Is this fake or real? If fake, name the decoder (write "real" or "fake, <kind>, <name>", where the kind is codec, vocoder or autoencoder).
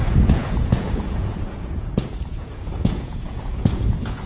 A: fake, vocoder, Vocos